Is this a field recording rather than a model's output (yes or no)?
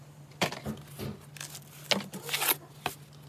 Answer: yes